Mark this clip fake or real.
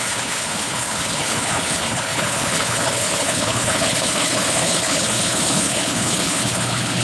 fake